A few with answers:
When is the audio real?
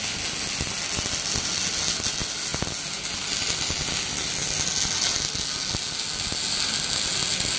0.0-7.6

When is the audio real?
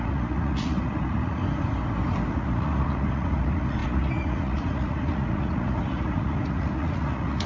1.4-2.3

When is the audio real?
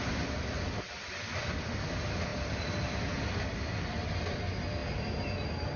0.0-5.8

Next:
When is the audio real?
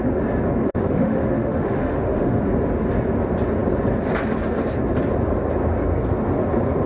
0.0-0.6; 2.4-6.9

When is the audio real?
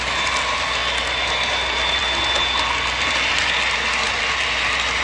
0.0-5.0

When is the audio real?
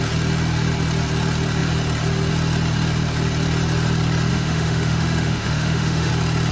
0.0-4.3; 6.1-6.5